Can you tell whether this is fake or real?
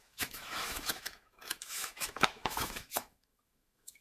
fake